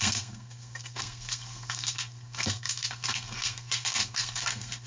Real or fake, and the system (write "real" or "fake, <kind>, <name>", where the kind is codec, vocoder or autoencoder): fake, codec, SNAC